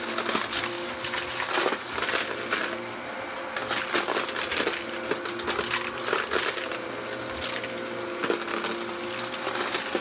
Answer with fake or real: real